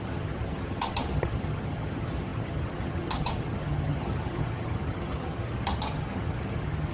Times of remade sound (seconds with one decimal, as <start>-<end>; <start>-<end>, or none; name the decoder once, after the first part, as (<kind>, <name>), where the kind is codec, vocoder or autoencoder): 0.0-6.9 (vocoder, HiFi-GAN)

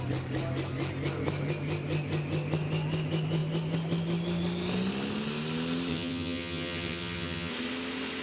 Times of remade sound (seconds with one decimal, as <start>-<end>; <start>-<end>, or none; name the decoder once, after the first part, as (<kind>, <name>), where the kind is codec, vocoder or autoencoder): 5.9-7.5 (vocoder, HiFi-GAN)

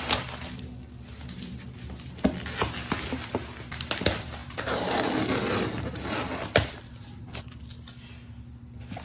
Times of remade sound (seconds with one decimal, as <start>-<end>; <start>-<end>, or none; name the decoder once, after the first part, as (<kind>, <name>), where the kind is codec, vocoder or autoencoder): 4.4-5.1 (vocoder, BigVGAN v2)

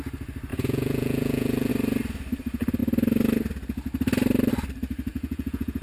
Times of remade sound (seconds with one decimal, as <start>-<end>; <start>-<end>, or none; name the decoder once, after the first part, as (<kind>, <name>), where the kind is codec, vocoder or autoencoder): 0.5-1.7 (vocoder, Vocos); 5.1-5.8

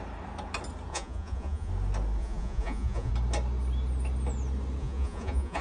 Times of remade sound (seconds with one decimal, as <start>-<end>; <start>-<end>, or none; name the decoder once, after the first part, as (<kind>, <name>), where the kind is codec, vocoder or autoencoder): 0.9-1.7 (vocoder, Vocos); 2.2-3.1; 4.8-5.6

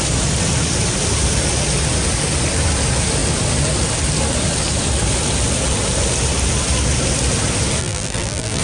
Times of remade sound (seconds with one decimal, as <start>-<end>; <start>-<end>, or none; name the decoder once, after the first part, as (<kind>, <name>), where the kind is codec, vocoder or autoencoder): 7.8-8.6 (vocoder, BigVGAN v2)

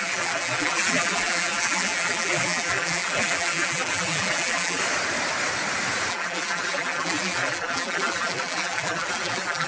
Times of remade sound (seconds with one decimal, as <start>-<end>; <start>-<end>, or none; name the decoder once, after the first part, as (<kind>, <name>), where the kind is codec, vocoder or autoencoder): 0.0-4.8 (vocoder, BigVGAN v2); 6.1-9.7